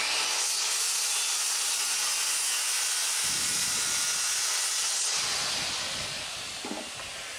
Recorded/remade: recorded